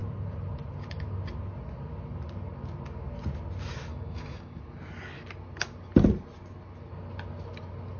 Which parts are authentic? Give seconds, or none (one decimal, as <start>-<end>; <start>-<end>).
0.0-3.9; 4.6-8.0